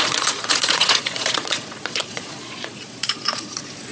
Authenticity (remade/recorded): remade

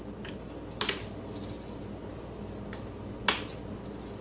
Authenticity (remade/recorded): recorded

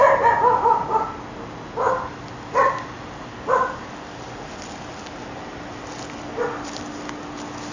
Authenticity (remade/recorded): recorded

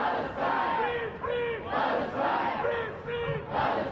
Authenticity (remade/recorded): recorded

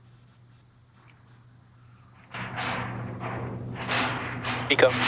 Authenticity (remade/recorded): recorded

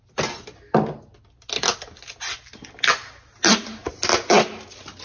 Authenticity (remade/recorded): recorded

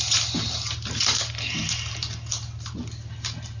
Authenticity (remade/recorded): recorded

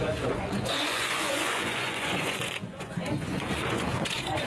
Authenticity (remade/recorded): remade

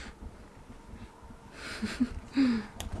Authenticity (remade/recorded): recorded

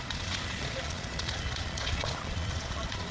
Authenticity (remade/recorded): remade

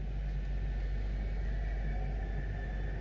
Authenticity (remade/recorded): recorded